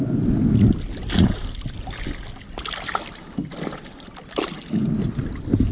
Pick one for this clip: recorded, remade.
recorded